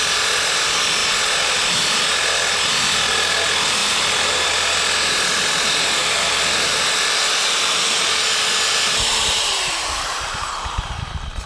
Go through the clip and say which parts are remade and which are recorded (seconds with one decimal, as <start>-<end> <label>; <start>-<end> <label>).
0.0-3.8 recorded; 3.8-4.5 remade; 4.5-6.0 recorded; 6.0-10.9 remade; 10.9-11.5 recorded

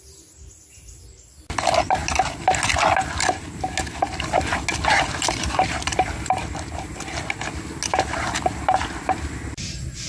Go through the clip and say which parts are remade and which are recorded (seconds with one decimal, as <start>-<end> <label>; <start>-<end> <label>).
0.0-10.1 recorded

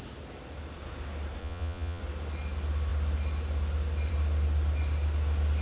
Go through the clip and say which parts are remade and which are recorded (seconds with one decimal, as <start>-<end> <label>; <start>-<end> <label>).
0.0-1.4 recorded; 1.4-2.0 remade; 2.0-5.6 recorded